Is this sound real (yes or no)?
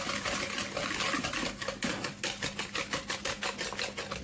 yes